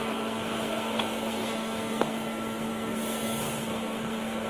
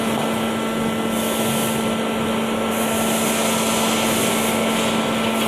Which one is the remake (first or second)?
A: first